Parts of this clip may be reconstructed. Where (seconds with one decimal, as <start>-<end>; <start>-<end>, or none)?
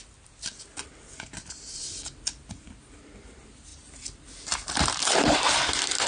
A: none